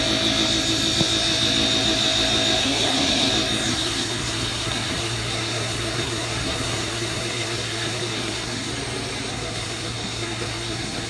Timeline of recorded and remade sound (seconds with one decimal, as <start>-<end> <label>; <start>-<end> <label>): 0.0-2.6 recorded; 2.6-3.3 remade; 3.3-3.7 recorded; 3.7-8.7 remade; 8.7-9.3 recorded; 9.3-11.1 remade